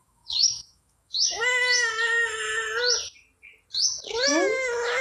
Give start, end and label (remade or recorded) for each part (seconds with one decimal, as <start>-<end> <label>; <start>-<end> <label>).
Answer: 0.0-1.9 remade; 1.9-4.3 recorded; 4.3-5.0 remade